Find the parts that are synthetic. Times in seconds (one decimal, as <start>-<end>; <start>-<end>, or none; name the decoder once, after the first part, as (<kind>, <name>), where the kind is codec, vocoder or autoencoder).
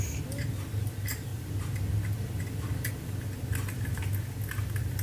none